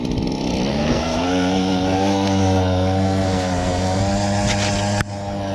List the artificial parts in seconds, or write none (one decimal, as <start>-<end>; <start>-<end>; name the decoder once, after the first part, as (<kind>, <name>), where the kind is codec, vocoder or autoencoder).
0.7-4.0 (codec, SNAC)